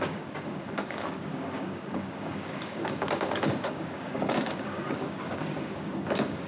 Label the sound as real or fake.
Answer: fake